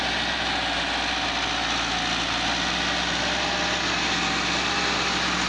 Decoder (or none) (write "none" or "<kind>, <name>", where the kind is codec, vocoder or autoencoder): none